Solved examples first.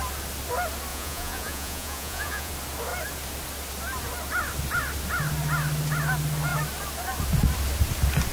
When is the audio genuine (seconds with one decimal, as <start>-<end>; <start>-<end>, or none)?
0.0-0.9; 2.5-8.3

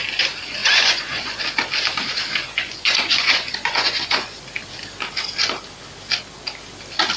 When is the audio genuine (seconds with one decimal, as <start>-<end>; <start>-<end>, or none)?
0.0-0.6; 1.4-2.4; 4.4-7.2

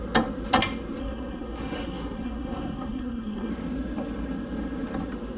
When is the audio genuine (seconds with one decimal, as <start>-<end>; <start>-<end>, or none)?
0.0-1.0; 3.5-5.4

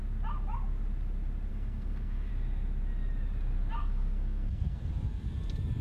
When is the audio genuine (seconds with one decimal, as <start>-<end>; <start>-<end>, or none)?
0.0-1.5; 2.3-3.8; 4.9-5.8